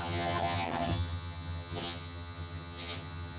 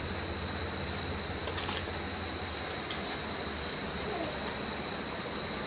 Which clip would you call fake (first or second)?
first